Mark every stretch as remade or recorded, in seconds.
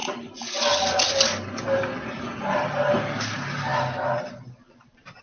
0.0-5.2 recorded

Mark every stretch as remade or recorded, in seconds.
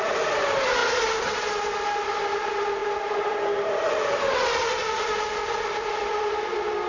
0.0-6.9 recorded